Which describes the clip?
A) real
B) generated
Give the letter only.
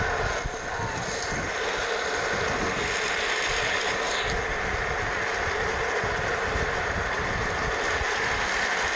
A